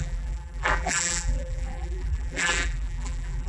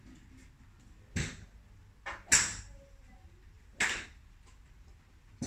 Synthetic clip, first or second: first